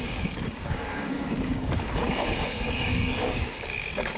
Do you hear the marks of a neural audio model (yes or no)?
yes